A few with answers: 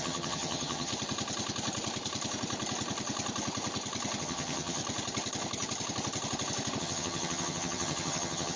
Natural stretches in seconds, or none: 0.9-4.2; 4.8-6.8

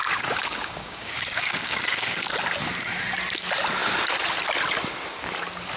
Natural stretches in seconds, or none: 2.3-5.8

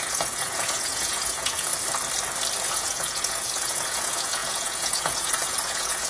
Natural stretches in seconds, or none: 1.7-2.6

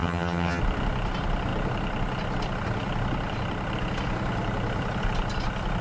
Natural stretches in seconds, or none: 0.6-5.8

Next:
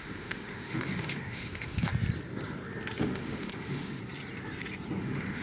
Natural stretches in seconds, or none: 1.9-3.0; 4.0-5.0